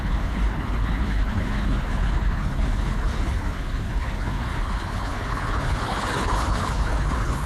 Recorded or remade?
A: remade